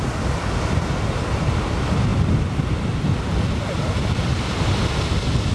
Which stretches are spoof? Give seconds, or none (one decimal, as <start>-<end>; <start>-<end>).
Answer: none